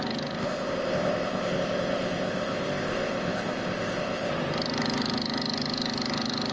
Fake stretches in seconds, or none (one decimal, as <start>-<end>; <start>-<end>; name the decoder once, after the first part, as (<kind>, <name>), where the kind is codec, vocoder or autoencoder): 0.4-4.3 (codec, ZipCodec)